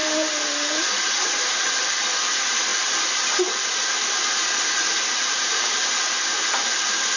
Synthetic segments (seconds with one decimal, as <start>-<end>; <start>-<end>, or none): 0.0-1.9; 2.7-3.9; 5.1-5.8